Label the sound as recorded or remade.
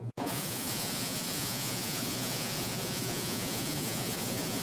remade